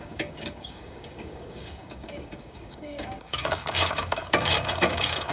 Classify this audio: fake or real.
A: fake